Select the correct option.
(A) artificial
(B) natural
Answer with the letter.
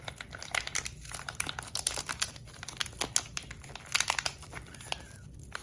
B